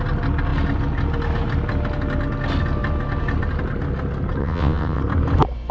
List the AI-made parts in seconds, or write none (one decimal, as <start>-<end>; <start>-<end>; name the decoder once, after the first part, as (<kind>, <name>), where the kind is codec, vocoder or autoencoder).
4.4-5.0 (vocoder, WaveNeXt)